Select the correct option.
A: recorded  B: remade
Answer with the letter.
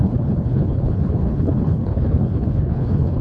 B